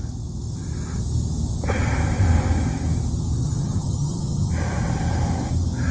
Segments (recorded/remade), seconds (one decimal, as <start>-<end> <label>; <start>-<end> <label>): 0.0-3.4 recorded; 3.4-4.5 remade; 4.5-5.9 recorded